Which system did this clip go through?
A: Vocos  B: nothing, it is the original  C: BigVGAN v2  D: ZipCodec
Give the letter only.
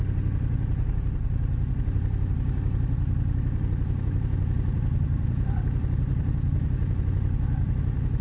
C